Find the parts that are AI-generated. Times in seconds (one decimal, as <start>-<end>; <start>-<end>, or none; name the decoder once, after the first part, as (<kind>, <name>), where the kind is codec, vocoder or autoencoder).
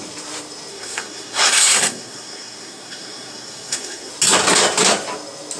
0.7-4.1 (codec, SNAC)